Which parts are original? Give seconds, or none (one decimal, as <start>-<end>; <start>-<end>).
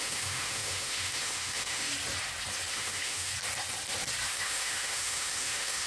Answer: 1.9-2.7; 3.3-4.3